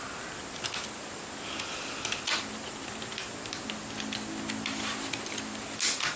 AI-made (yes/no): no